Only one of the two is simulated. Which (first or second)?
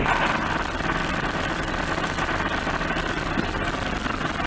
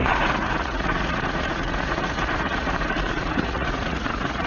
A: second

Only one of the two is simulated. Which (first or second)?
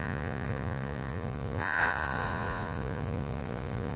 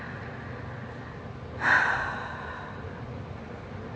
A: first